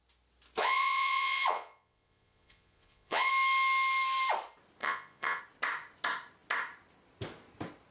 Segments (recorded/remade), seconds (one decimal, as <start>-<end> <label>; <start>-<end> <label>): 0.0-0.6 recorded; 0.6-3.3 remade; 3.3-4.8 recorded; 4.8-5.4 remade; 5.4-7.9 recorded